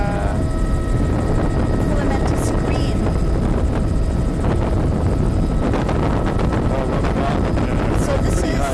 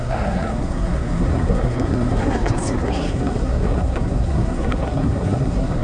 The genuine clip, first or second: first